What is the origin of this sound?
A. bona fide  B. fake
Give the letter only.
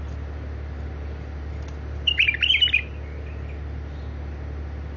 A